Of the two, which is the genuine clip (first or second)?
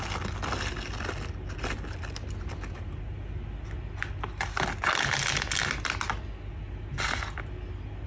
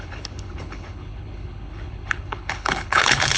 first